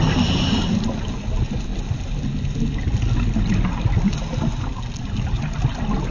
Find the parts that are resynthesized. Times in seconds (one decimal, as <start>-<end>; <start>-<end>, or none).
none